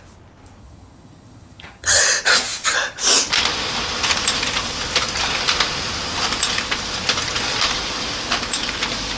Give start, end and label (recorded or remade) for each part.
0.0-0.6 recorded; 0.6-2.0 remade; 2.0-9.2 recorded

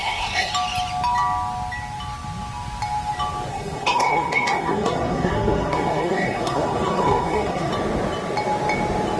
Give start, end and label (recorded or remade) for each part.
0.0-0.5 remade; 0.5-3.5 recorded; 3.5-7.7 remade; 7.7-9.2 recorded

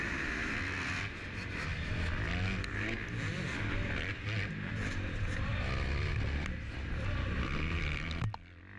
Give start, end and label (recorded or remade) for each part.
0.0-8.8 recorded

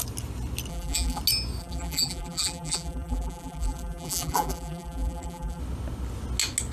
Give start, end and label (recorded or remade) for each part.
0.0-0.7 recorded; 0.7-1.2 remade; 1.2-1.6 recorded; 1.6-5.6 remade; 5.6-6.7 recorded

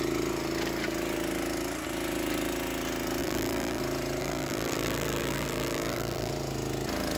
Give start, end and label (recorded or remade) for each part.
0.0-3.2 recorded; 3.2-3.8 remade; 3.8-4.2 recorded; 4.2-6.3 remade; 6.3-7.2 recorded